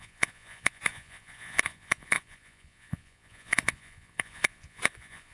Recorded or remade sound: remade